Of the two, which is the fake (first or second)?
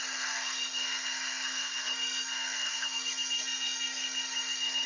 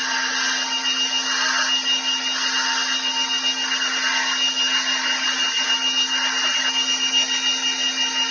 first